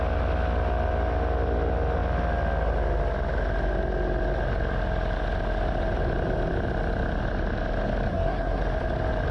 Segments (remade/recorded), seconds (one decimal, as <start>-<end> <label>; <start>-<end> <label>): 0.0-8.1 recorded; 8.1-8.6 remade; 8.6-9.3 recorded